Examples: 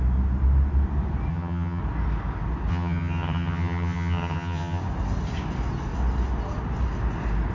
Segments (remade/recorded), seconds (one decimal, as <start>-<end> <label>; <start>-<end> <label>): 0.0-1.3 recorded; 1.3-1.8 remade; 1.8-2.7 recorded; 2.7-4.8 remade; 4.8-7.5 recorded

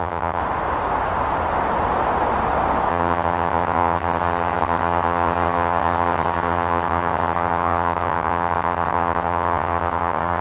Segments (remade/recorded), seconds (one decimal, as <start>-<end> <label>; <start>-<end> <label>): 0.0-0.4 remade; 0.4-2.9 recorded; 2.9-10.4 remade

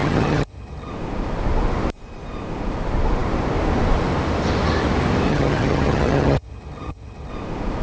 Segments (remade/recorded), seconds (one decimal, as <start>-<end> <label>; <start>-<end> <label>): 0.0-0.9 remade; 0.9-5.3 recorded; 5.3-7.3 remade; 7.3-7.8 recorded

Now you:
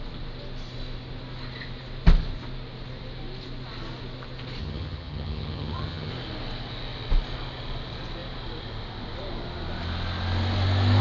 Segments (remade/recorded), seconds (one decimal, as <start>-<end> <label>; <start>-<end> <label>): 0.0-4.6 recorded; 4.6-6.1 remade; 6.1-11.0 recorded

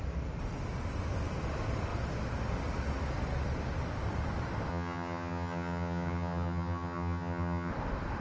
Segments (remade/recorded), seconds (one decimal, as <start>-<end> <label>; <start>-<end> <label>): 0.0-4.7 recorded; 4.7-7.7 remade; 7.7-8.2 recorded

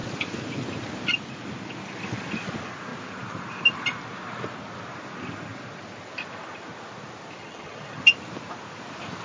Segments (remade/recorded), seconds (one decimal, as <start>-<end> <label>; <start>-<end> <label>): 0.0-7.4 recorded; 7.4-8.0 remade; 8.0-9.2 recorded